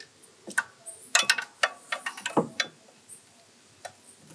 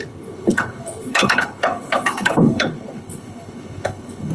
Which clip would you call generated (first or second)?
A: second